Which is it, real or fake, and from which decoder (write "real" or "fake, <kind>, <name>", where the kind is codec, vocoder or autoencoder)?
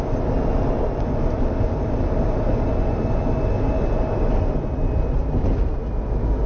real